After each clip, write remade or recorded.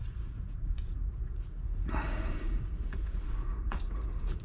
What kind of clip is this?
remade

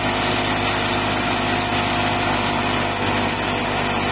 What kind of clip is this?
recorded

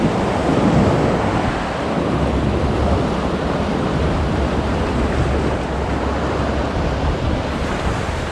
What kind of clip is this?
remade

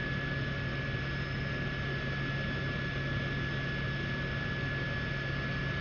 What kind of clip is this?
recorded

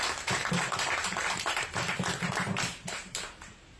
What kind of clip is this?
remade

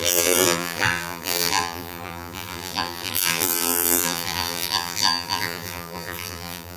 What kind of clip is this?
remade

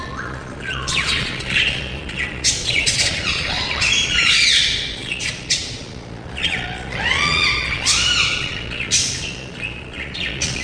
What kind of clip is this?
remade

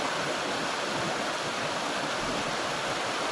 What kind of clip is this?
recorded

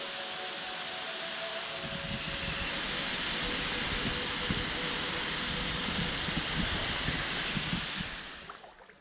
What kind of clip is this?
recorded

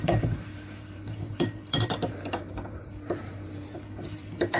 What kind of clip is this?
remade